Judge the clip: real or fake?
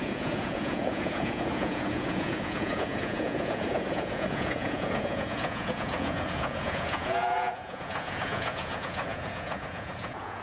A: fake